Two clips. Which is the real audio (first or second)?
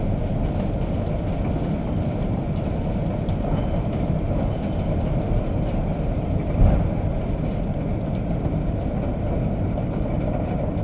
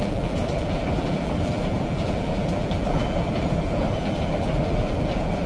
first